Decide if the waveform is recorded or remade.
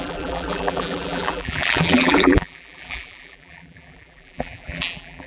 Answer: remade